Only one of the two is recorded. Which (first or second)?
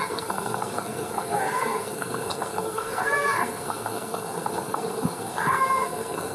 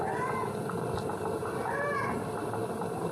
second